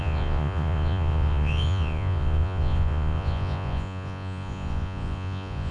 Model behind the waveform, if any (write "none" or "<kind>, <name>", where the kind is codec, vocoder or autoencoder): vocoder, Vocos